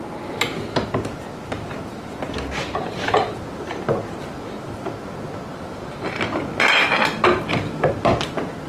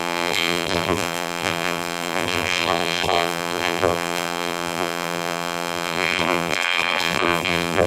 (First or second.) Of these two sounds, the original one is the first